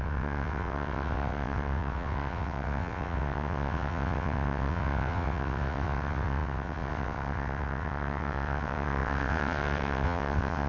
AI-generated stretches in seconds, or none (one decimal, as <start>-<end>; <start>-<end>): 0.0-10.7

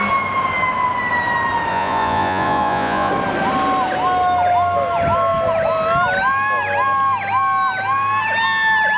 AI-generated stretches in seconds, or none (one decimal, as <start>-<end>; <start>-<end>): 1.7-3.1

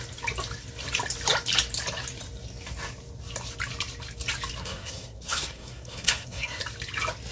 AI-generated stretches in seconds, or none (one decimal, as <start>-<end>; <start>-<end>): 4.6-6.6

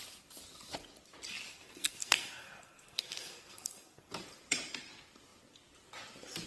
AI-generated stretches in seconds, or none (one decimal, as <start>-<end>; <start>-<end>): 1.5-4.1

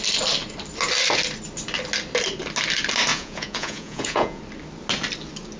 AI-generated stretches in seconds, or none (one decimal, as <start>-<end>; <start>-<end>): 3.1-4.4

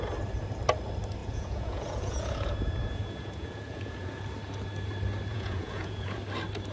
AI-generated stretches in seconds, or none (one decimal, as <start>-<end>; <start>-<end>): 1.2-4.2; 5.3-6.2